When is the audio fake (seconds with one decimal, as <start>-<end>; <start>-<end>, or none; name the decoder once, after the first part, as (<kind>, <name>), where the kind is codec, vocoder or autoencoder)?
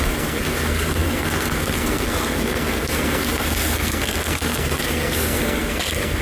0.0-6.2 (codec, SNAC)